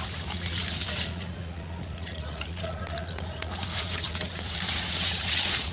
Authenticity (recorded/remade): remade